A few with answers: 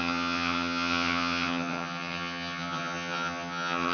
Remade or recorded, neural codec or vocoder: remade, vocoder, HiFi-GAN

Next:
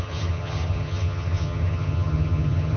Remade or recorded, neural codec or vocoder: remade, vocoder, HiFi-GAN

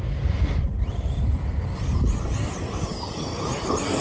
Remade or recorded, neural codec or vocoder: recorded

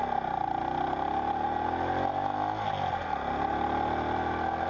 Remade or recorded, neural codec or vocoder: recorded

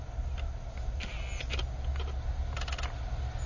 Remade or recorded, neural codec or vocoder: recorded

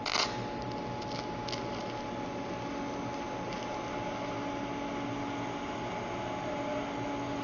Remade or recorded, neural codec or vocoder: recorded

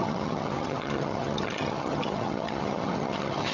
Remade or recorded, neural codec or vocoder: remade, vocoder, HiFi-GAN